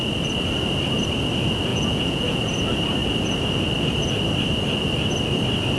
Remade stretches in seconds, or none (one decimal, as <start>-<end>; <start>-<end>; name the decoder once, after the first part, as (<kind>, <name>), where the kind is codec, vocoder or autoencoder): 1.7-2.4 (vocoder, Vocos)